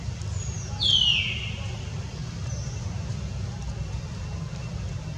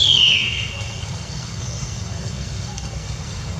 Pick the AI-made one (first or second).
second